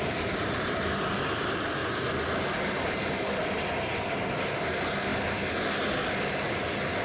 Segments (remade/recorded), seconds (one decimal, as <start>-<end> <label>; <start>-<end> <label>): 0.0-7.0 recorded